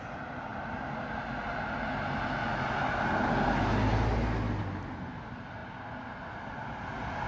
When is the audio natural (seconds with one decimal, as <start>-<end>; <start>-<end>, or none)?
0.0-7.3